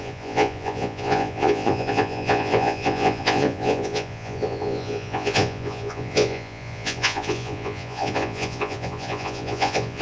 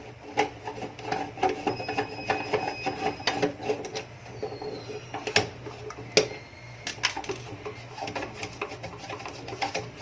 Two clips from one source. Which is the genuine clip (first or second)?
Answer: second